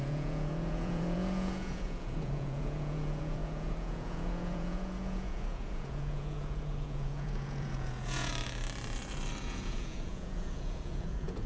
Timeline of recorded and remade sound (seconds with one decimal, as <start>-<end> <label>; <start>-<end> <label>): 0.0-8.3 remade; 8.3-9.4 recorded; 9.4-11.5 remade